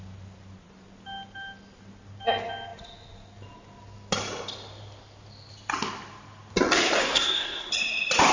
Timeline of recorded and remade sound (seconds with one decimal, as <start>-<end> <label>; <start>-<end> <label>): 0.0-7.0 recorded; 7.0-7.7 remade; 7.7-8.3 recorded